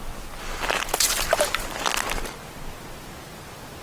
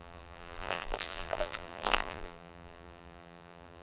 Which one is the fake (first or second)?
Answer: second